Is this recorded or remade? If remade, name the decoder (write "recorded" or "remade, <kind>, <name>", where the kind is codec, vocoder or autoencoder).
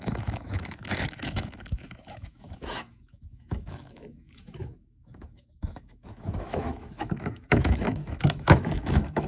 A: remade, autoencoder, DAC-VAE